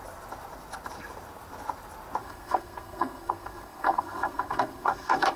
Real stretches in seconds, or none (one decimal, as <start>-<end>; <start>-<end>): 0.0-2.2